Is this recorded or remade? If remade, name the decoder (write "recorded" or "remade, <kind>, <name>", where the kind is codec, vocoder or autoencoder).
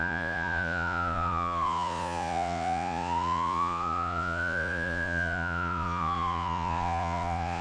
remade, vocoder, Vocos